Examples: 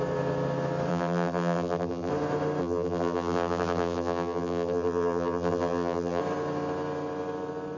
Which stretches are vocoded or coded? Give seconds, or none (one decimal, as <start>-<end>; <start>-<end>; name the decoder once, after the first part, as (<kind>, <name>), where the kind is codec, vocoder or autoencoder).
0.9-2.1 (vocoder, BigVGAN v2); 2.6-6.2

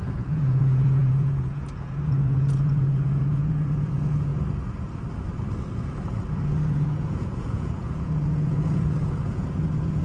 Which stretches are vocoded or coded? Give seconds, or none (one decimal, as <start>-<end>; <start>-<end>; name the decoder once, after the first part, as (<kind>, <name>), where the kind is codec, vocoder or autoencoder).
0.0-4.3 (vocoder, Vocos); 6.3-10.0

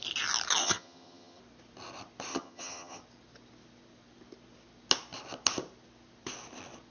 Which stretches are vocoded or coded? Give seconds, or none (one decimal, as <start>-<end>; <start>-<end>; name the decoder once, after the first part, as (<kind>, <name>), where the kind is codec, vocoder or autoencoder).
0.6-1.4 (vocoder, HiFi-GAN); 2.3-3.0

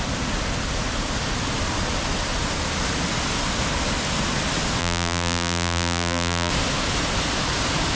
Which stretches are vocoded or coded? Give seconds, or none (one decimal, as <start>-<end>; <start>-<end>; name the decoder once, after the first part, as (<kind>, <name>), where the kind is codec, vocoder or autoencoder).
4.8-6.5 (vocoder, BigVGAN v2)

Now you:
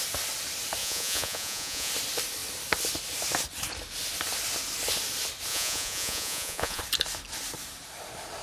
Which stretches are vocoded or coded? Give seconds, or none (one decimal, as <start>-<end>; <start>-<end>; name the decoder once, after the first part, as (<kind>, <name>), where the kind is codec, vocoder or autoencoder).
0.8-1.9 (vocoder, Vocos); 5.5-6.8